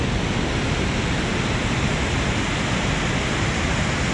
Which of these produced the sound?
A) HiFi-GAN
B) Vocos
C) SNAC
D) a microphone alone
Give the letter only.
D